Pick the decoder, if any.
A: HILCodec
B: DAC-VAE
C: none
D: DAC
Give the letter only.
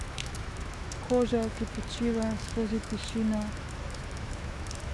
B